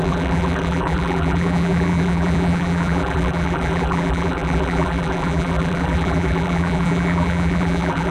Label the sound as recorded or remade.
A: remade